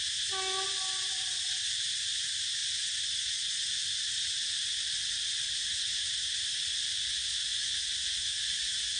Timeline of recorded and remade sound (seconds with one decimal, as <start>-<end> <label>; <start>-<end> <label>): 0.0-7.5 recorded; 7.5-9.0 remade